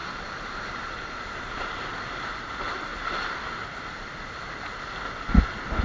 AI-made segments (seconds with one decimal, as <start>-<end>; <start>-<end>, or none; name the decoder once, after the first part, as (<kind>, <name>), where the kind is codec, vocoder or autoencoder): 0.0-1.8 (vocoder, BigVGAN v2); 2.9-4.8